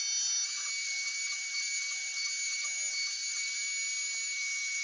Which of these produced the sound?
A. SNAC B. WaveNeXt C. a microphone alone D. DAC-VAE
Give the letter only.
C